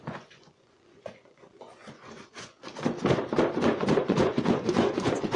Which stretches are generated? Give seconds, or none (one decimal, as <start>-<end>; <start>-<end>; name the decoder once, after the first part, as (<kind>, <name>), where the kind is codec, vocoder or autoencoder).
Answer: 0.0-2.7 (vocoder, Vocos); 3.6-5.4